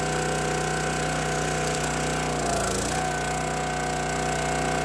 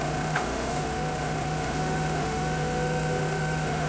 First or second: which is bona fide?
first